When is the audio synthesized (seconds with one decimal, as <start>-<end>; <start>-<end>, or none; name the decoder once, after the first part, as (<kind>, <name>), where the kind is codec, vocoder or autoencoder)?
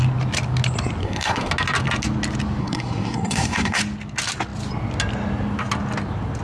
1.0-1.5 (codec, SNAC); 2.6-3.8